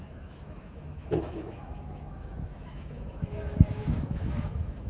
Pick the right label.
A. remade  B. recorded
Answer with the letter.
A